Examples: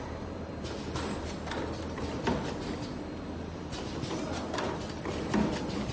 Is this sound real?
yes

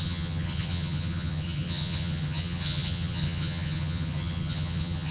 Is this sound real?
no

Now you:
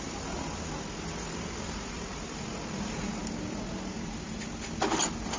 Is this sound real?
yes